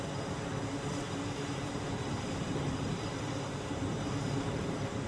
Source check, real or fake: fake